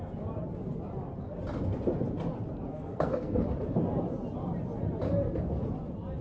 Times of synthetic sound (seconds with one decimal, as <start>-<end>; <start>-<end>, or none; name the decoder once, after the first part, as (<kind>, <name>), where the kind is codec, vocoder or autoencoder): 2.7-3.4 (codec, SNAC)